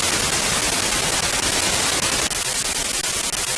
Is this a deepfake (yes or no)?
no